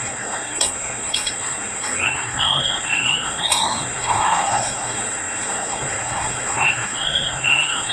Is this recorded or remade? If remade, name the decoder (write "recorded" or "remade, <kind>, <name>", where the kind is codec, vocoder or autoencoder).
remade, codec, SNAC